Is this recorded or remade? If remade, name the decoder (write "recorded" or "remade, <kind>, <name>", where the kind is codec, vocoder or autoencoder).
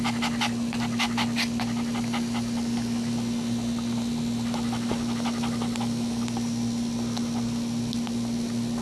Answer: recorded